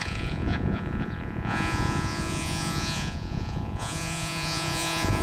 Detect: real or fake fake